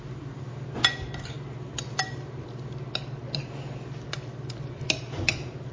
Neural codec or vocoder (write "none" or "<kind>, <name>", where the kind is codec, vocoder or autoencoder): none